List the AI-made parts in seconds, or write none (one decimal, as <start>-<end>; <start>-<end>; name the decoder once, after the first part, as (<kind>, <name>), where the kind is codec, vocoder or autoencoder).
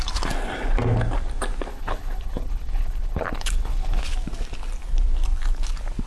1.7-4.0 (codec, HILCodec)